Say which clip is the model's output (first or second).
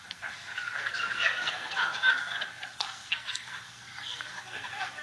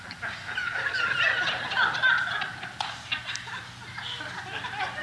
first